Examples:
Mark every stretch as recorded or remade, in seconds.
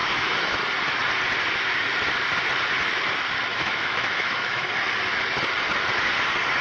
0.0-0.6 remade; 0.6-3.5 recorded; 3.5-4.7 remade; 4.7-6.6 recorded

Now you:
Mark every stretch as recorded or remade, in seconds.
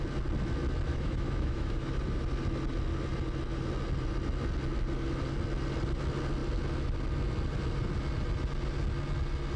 0.0-0.9 recorded; 0.9-1.9 remade; 1.9-9.6 recorded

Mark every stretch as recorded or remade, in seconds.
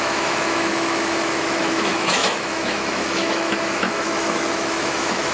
0.0-5.3 remade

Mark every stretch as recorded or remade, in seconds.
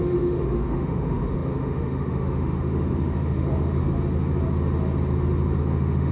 0.0-3.8 remade; 3.8-5.6 recorded; 5.6-6.1 remade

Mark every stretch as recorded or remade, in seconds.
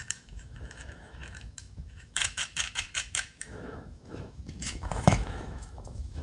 0.0-6.2 remade